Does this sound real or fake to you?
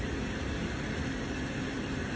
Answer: fake